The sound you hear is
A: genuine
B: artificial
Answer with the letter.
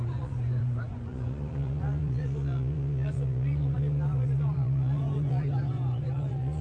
B